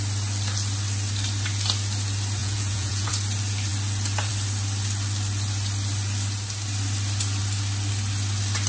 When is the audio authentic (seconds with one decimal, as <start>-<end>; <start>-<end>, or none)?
0.0-2.4; 3.1-8.7